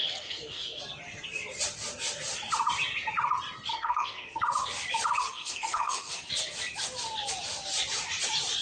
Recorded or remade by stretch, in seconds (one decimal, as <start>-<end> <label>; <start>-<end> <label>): 0.0-0.8 remade; 0.8-3.7 recorded; 3.7-4.4 remade; 4.4-5.2 recorded; 5.2-6.3 remade; 6.3-8.6 recorded

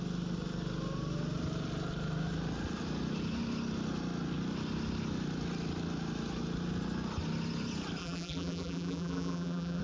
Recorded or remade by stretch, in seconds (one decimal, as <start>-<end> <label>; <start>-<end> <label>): 0.0-8.0 recorded; 8.0-9.8 remade

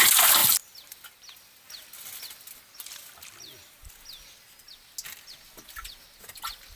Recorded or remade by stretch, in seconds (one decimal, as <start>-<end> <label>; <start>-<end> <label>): 0.0-6.8 recorded

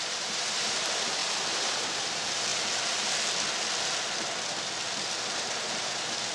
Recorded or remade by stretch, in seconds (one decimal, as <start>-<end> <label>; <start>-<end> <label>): 0.0-2.5 remade; 2.5-5.4 recorded; 5.4-6.3 remade

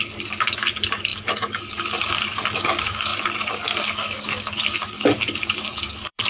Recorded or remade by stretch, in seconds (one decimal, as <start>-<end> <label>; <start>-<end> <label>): 0.0-6.3 remade

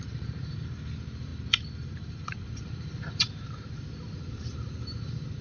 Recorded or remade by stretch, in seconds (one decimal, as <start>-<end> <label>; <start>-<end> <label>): 0.0-5.4 remade

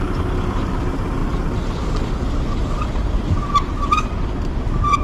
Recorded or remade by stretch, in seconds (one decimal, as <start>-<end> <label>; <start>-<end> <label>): 0.0-5.0 recorded